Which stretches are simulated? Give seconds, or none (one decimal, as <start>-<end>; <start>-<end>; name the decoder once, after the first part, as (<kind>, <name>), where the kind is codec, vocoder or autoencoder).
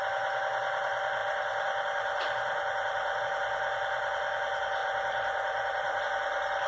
1.2-3.2 (vocoder, BigVGAN v2); 4.8-6.0